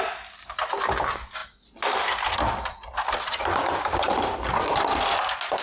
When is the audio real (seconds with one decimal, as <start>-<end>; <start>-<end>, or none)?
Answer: 0.0-5.6